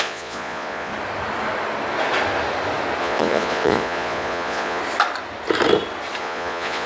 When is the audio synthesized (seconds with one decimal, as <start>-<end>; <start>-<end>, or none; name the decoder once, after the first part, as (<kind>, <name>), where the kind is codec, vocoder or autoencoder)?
0.0-0.9 (vocoder, Vocos); 3.0-4.8; 6.2-6.9